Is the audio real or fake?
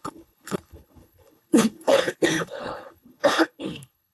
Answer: fake